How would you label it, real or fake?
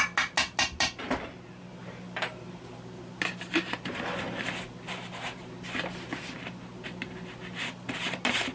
real